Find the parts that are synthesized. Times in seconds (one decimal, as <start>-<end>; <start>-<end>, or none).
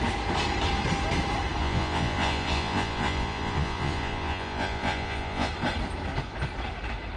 1.6-5.5